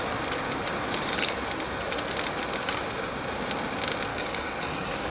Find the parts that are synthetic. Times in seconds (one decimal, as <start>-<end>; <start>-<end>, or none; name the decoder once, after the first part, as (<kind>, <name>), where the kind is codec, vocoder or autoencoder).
4.1-5.1 (codec, DAC)